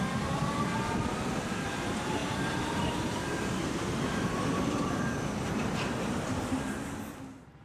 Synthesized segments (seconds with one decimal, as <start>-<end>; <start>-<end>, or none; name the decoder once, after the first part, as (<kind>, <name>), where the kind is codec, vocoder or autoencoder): 2.2-6.8 (vocoder, BigVGAN v2)